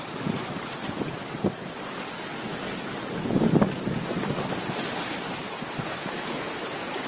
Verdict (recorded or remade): recorded